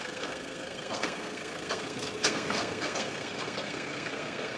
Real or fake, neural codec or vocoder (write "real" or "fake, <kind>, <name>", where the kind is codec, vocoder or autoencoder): fake, codec, SNAC